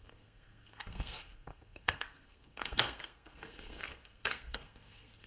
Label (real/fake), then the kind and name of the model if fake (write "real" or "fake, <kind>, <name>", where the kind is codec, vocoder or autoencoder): fake, codec, SNAC